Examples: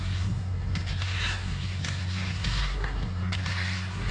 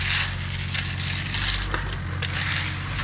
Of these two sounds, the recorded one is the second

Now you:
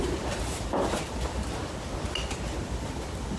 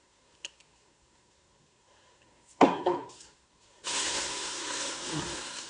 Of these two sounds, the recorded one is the first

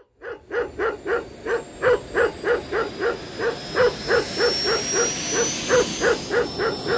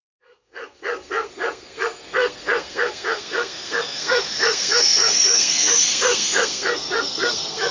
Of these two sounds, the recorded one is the first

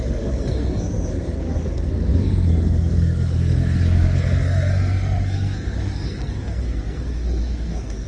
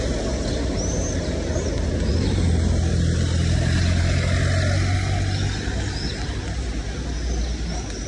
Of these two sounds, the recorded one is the second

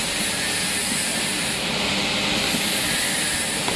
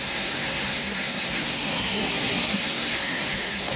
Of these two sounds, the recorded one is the first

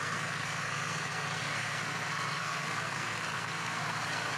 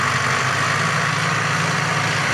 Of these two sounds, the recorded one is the second